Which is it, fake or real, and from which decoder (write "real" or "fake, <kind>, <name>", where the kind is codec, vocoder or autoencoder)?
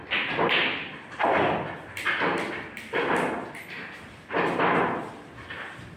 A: real